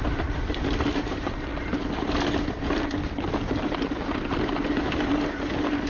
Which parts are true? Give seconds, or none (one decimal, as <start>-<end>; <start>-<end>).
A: 0.0-5.9